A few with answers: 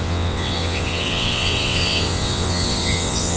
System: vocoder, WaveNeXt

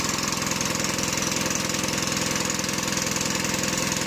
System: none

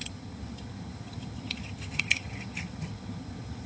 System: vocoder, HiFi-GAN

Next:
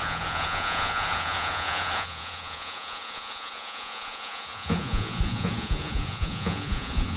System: vocoder, Vocos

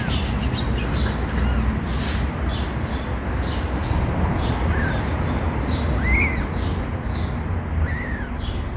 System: none